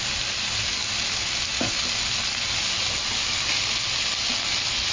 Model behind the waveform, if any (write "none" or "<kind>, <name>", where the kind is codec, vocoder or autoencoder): none